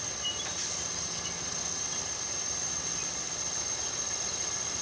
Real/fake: real